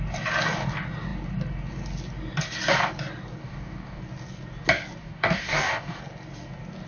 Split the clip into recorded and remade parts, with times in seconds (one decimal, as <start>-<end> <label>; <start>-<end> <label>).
0.0-3.4 recorded; 3.4-4.0 remade; 4.0-5.0 recorded; 5.0-6.0 remade; 6.0-6.9 recorded